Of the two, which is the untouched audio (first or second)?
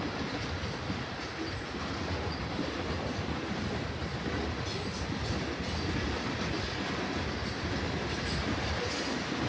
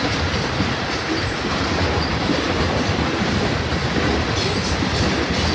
first